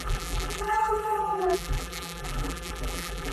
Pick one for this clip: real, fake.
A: fake